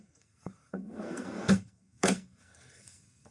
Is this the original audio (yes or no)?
no